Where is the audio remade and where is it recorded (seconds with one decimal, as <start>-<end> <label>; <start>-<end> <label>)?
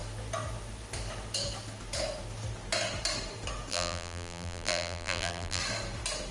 0.0-3.7 recorded; 3.7-5.6 remade; 5.6-6.3 recorded